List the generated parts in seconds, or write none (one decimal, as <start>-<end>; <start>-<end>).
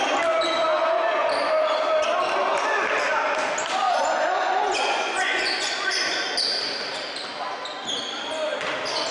4.1-6.1